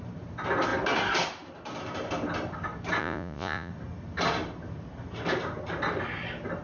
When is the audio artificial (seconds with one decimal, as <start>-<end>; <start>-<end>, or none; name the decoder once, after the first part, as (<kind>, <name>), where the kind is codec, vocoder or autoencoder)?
3.0-3.7 (vocoder, Vocos)